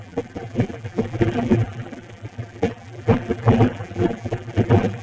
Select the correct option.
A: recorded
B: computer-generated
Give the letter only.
B